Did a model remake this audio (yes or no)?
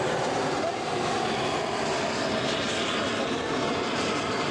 no